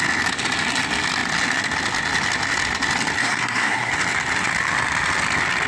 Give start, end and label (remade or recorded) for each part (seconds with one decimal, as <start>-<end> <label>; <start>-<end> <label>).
0.0-3.2 recorded; 3.2-3.9 remade; 3.9-5.7 recorded